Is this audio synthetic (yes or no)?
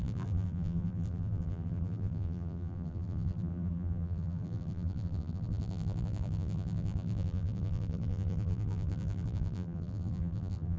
yes